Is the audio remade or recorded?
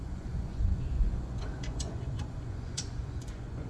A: remade